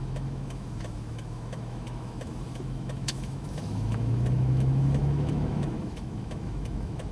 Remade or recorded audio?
remade